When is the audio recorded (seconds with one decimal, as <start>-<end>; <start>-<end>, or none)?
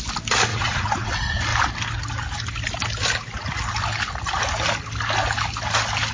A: 0.0-0.5; 1.1-6.1